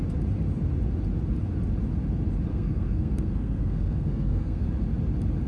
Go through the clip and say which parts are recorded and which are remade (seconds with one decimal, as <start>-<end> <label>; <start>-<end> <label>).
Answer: 0.0-2.5 recorded; 2.5-4.7 remade; 4.7-5.5 recorded